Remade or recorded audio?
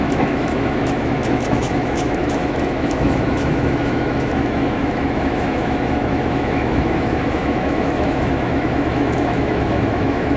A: remade